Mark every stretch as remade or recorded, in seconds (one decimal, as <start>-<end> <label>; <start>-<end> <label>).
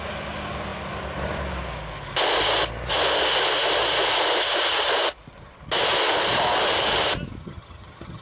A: 0.0-7.4 recorded; 7.4-8.2 remade